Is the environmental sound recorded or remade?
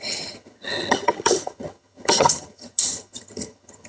remade